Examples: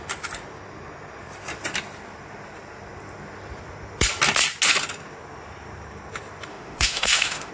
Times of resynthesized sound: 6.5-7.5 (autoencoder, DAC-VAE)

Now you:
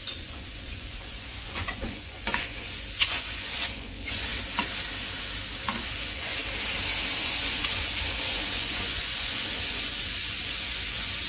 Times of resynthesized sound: 0.0-4.3 (vocoder, Vocos); 5.6-6.4; 7.2-11.3

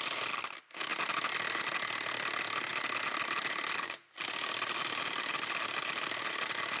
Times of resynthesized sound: none

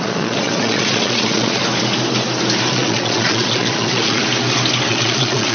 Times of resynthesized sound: 0.0-1.6 (vocoder, Vocos); 2.7-4.2; 4.9-5.5

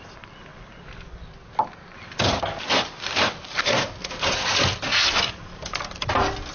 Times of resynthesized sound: 0.5-2.4 (vocoder, BigVGAN v2); 3.4-3.9